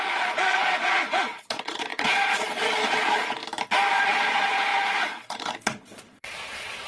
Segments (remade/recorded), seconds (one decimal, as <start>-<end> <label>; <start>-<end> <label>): 0.0-3.4 remade; 3.4-3.9 recorded; 3.9-6.9 remade